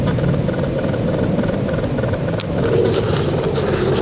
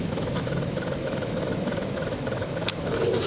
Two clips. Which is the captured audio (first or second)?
first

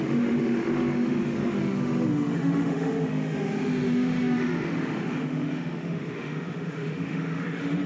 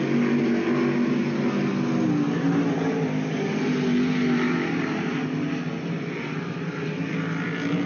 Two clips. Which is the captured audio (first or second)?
second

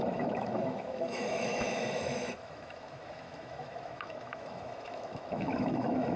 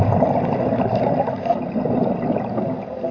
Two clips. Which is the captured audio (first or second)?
second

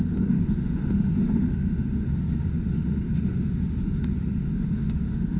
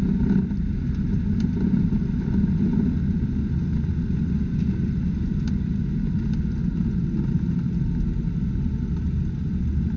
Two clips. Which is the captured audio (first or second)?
second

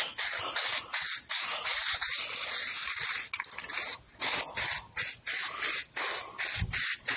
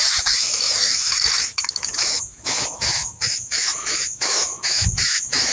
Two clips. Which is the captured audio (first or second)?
first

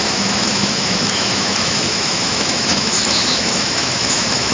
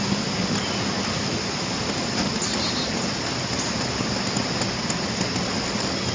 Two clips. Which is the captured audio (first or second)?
second